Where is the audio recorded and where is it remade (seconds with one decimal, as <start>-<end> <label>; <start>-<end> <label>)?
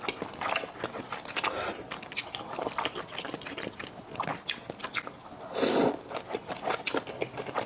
0.0-7.7 recorded